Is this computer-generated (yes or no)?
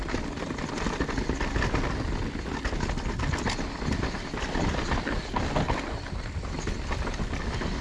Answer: no